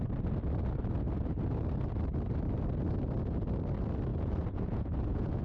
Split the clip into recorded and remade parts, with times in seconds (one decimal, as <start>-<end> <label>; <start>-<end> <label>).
0.0-4.1 recorded; 4.1-5.4 remade